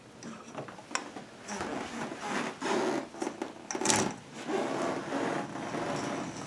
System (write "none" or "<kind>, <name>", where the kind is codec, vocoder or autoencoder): none